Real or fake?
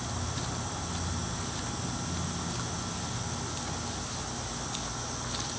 real